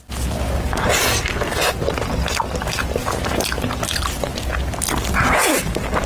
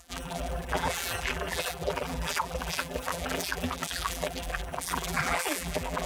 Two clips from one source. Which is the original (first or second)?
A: first